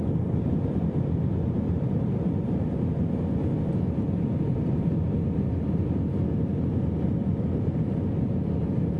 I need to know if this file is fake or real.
real